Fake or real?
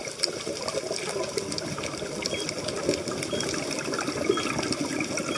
real